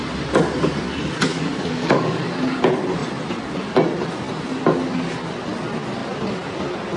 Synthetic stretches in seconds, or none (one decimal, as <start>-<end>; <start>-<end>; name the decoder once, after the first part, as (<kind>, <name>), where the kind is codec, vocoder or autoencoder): 1.3-2.2 (codec, DAC)